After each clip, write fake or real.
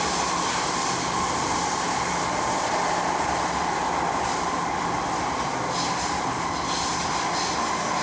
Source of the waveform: real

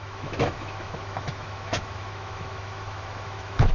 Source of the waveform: fake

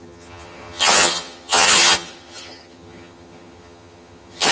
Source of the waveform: fake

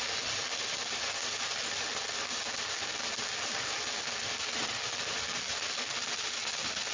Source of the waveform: real